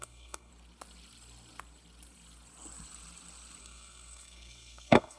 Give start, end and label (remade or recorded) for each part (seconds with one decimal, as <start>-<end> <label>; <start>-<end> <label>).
0.0-0.5 remade; 0.5-3.6 recorded; 3.6-5.2 remade